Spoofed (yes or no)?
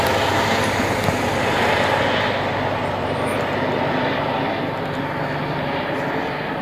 no